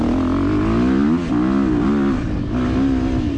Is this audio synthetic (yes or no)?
no